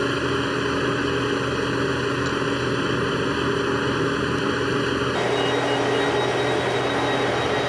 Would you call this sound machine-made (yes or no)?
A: no